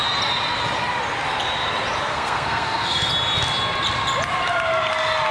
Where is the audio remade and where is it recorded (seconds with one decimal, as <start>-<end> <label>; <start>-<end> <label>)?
0.0-2.1 recorded; 2.1-3.1 remade; 3.1-5.3 recorded